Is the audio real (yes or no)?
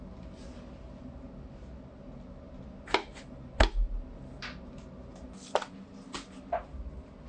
yes